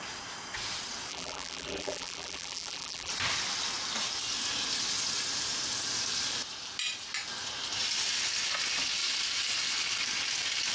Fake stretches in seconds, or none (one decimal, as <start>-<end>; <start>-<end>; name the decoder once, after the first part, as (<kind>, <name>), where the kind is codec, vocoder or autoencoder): 1.1-3.1 (vocoder, BigVGAN v2)